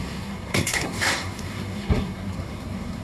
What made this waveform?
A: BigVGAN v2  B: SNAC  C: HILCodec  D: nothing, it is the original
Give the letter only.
B